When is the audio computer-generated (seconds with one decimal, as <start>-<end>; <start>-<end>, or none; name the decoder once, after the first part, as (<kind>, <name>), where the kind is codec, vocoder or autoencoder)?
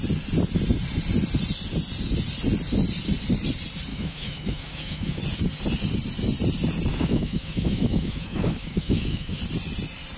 3.9-5.2 (autoencoder, DAC-VAE); 6.9-9.4